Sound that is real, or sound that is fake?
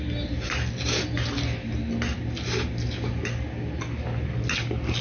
real